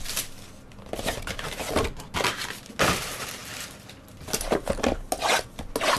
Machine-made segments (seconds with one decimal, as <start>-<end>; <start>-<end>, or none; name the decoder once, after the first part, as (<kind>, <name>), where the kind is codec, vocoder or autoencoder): none